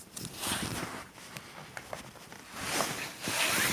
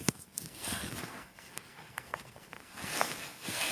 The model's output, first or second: second